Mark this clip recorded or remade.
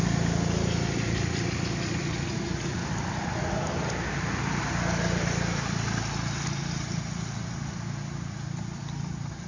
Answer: recorded